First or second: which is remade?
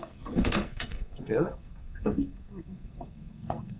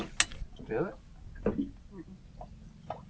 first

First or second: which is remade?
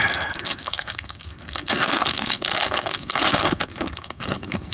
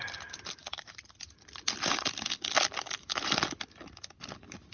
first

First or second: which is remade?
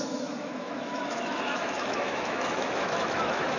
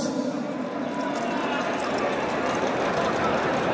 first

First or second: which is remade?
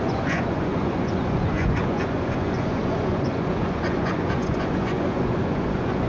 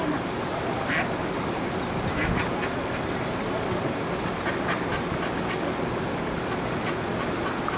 first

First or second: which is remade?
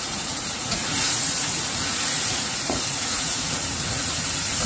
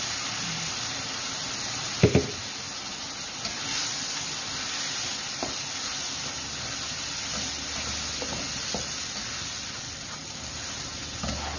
first